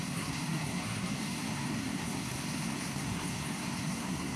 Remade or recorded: remade